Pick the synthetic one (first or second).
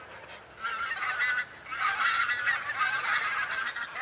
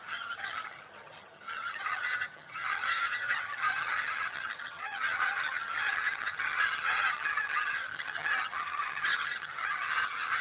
second